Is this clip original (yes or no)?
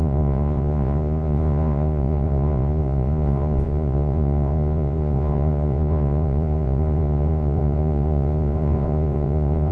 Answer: no